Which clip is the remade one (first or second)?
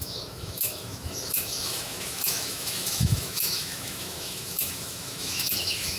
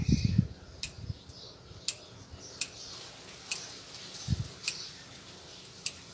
first